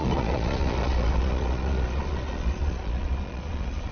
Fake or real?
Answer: fake